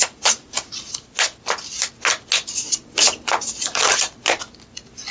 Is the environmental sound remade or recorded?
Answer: recorded